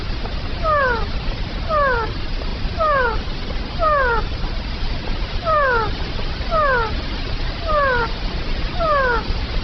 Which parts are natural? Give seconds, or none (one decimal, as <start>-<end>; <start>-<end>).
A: 0.0-9.6